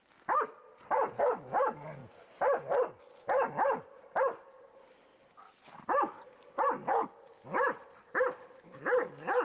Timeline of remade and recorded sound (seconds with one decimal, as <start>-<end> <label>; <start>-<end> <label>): 0.0-9.4 recorded